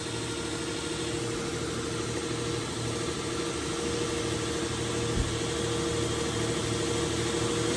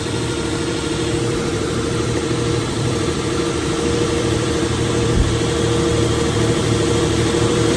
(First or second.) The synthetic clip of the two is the second